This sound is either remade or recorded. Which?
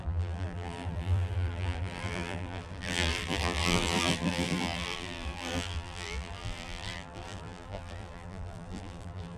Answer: remade